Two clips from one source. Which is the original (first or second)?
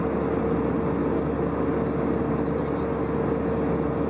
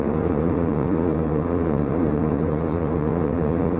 first